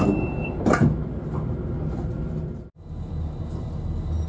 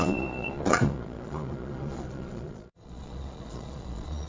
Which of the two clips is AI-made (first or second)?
second